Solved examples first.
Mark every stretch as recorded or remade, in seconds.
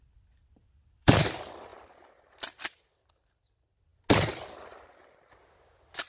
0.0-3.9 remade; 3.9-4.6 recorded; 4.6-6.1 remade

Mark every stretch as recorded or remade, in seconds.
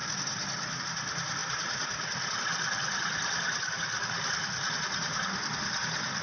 0.0-6.2 recorded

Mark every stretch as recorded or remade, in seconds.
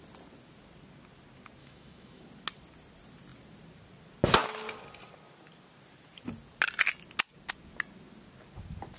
0.0-1.6 recorded; 1.6-2.2 remade; 2.2-9.0 recorded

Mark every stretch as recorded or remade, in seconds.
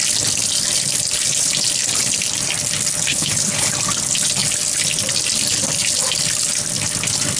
0.0-3.1 recorded; 3.1-3.7 remade; 3.7-7.4 recorded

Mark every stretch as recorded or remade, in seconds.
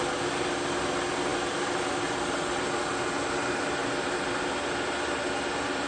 0.0-5.9 recorded